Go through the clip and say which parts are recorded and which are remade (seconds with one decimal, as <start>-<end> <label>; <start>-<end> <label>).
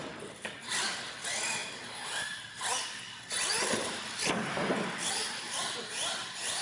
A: 0.0-6.6 recorded